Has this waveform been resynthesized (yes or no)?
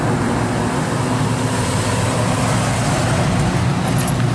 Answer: no